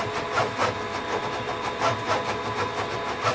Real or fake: real